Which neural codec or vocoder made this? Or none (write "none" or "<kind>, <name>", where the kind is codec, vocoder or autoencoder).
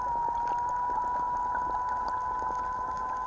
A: none